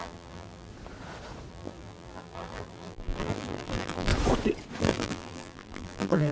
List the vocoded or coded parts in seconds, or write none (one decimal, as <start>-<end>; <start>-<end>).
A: 0.0-0.7; 1.5-4.1; 4.8-6.3